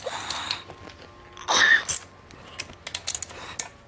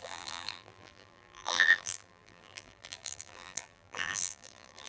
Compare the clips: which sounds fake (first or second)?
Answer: second